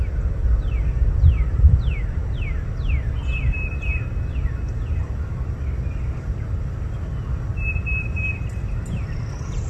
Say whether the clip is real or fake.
real